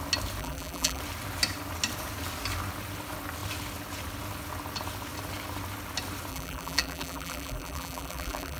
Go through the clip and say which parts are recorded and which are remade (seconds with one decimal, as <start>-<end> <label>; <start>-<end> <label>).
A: 0.0-0.4 recorded; 0.4-1.0 remade; 1.0-6.3 recorded; 6.3-8.6 remade